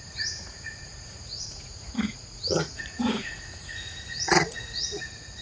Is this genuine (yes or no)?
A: no